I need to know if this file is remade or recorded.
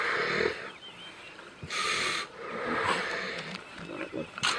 recorded